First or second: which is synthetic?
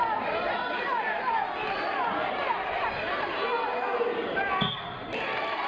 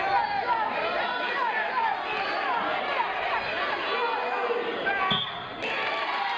first